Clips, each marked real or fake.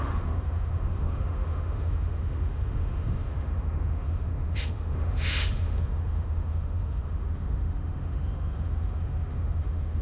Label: fake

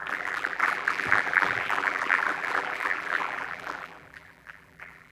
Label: fake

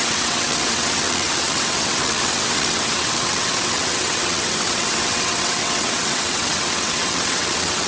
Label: fake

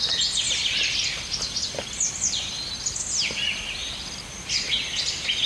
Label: real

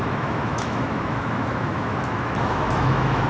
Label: fake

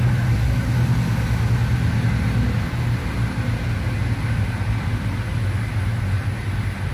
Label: real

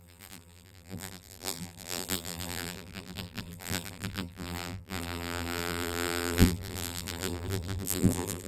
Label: fake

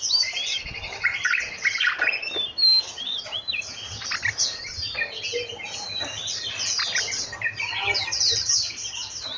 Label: fake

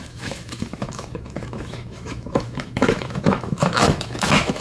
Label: fake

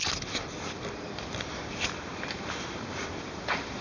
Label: fake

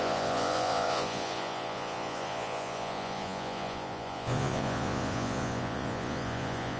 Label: fake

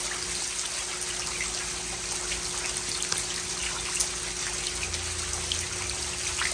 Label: real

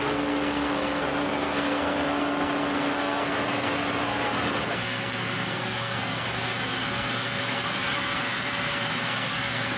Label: fake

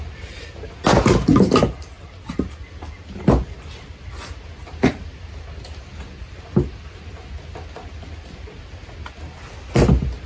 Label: real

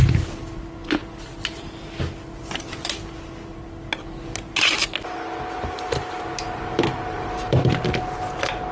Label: real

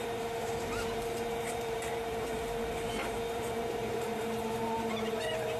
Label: fake